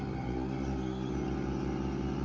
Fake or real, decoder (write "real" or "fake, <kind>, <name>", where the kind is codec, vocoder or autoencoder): real